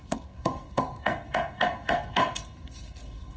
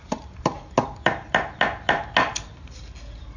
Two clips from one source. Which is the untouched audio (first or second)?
second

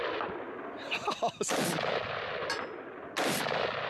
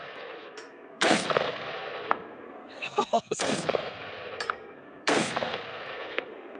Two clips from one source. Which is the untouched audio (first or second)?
first